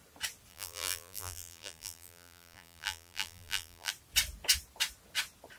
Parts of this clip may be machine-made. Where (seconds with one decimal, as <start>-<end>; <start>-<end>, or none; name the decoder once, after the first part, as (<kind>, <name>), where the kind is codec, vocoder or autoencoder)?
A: 0.5-3.9 (vocoder, BigVGAN v2)